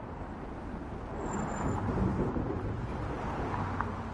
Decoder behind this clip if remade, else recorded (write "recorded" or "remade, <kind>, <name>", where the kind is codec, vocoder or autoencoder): recorded